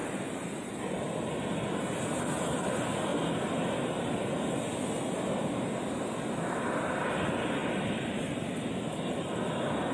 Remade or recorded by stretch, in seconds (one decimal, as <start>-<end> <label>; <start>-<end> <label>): 0.0-1.0 remade; 1.0-7.6 recorded; 7.6-9.4 remade; 9.4-9.9 recorded